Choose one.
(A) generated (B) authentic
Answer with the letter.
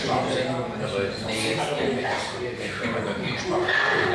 B